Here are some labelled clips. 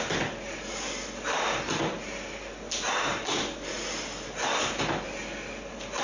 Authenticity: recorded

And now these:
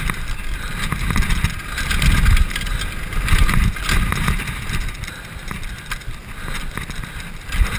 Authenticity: recorded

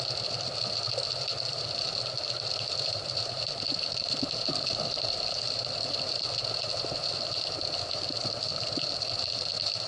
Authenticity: remade